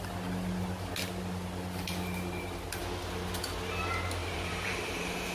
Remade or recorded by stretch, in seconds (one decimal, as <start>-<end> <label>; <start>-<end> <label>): 0.0-4.2 recorded; 4.2-5.3 remade